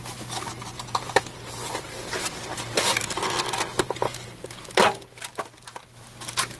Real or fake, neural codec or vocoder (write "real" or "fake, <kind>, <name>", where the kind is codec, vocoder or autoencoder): real